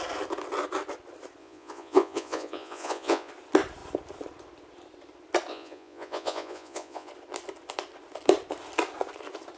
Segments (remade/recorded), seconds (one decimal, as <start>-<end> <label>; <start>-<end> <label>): 0.0-1.4 recorded; 1.4-3.3 remade; 3.3-5.5 recorded; 5.5-7.1 remade; 7.1-9.6 recorded